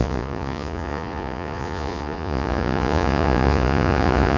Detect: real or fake fake